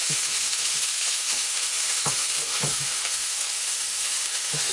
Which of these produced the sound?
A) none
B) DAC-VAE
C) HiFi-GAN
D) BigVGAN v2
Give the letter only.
B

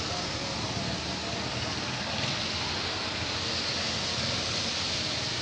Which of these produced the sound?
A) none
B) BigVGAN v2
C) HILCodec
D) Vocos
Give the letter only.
A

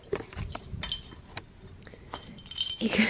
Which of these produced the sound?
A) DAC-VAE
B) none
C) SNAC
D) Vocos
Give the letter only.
B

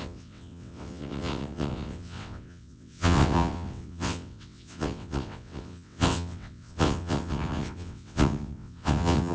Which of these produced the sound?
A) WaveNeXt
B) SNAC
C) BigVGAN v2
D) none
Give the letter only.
A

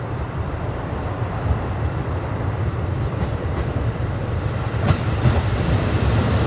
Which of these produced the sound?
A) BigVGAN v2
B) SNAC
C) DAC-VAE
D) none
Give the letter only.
A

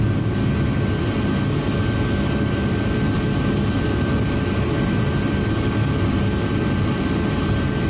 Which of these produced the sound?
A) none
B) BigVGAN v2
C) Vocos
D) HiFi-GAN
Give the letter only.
A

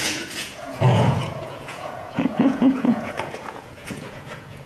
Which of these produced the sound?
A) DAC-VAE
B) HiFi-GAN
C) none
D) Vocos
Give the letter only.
D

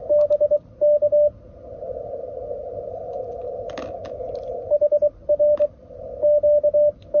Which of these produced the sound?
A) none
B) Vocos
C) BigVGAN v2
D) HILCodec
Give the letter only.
A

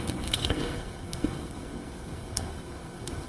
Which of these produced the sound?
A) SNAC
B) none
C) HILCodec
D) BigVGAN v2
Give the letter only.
A